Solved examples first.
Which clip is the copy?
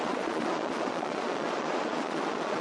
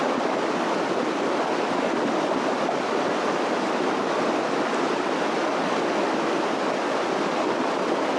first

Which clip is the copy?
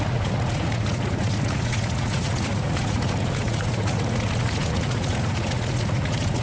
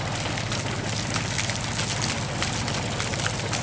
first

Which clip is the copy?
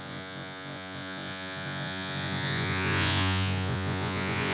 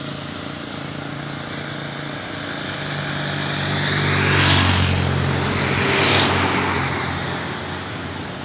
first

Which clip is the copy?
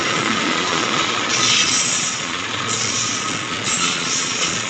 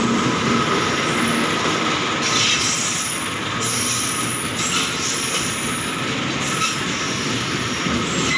first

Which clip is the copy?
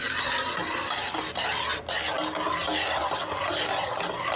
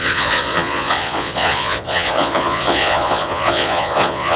second